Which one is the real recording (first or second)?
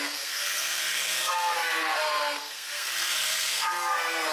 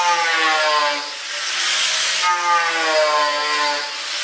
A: second